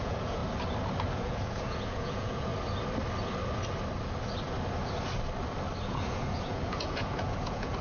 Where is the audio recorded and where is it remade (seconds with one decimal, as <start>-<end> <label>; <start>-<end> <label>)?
0.0-0.4 remade; 0.4-1.1 recorded; 1.1-2.5 remade; 2.5-5.8 recorded; 5.8-7.8 remade